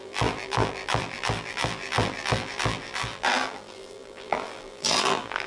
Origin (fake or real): fake